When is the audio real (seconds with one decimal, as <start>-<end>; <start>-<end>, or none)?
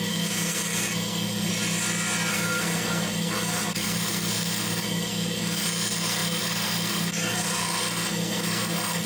1.5-2.3